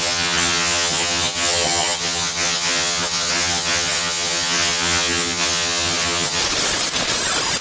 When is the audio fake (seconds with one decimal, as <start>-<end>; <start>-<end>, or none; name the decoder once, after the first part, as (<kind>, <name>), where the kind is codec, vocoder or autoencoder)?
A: 0.0-6.4 (vocoder, HiFi-GAN)